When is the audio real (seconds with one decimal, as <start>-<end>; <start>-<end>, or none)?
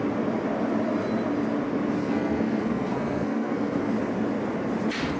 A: 0.0-2.0; 3.9-5.2